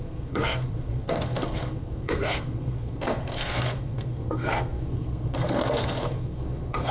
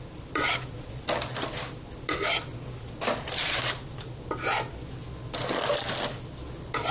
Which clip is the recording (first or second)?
second